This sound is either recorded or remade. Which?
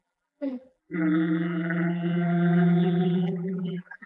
remade